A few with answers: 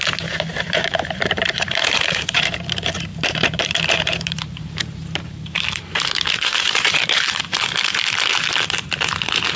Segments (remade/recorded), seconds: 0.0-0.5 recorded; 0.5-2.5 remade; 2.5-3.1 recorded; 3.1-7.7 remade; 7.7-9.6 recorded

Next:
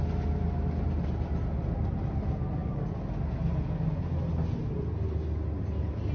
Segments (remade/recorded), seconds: 0.0-6.1 recorded